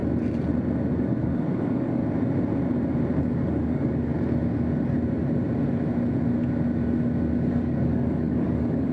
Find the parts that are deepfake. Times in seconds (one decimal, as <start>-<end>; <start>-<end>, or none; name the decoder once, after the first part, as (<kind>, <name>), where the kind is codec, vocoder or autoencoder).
1.0-2.0 (codec, DAC); 3.2-4.1; 7.5-8.9